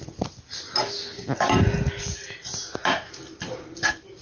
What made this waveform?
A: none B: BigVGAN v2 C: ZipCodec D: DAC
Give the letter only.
A